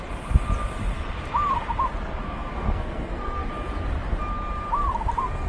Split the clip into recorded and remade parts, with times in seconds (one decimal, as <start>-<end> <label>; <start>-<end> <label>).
0.0-2.2 recorded; 2.2-3.5 remade; 3.5-5.5 recorded